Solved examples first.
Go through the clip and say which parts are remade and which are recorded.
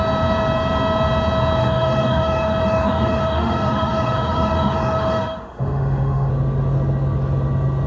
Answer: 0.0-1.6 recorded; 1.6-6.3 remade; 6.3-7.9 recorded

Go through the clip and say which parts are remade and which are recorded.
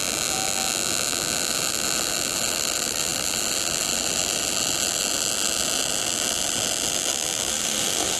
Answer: 0.0-7.5 recorded; 7.5-8.2 remade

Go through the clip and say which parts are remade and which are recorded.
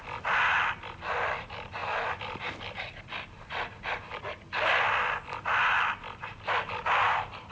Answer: 0.0-7.5 recorded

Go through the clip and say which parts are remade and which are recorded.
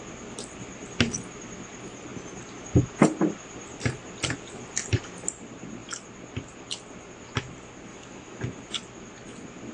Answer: 0.0-7.9 recorded; 7.9-8.4 remade; 8.4-9.7 recorded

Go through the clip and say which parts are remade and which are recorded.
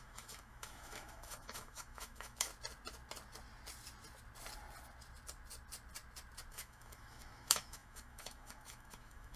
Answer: 0.0-2.5 remade; 2.5-6.5 recorded; 6.5-9.4 remade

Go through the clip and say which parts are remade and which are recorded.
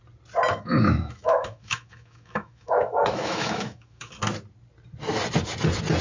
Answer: 0.0-0.5 recorded; 0.5-4.1 remade; 4.1-6.0 recorded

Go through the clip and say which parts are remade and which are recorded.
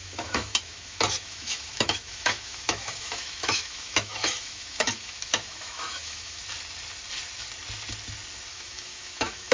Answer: 0.0-6.4 remade; 6.4-8.5 recorded; 8.5-9.5 remade